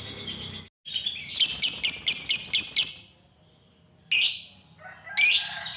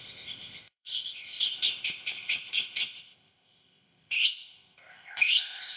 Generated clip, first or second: second